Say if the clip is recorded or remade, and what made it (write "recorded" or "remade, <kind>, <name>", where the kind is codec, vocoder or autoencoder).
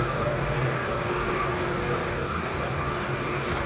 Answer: remade, codec, DAC